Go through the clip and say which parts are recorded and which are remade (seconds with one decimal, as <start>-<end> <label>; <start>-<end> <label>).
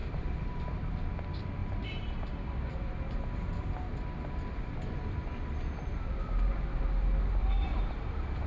0.0-0.9 remade; 0.9-1.6 recorded; 1.6-3.1 remade; 3.1-7.4 recorded; 7.4-8.5 remade